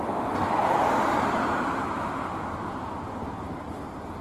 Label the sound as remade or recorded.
recorded